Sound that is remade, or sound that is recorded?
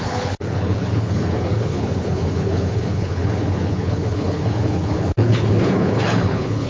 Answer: remade